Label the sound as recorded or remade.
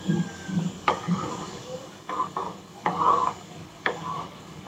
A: remade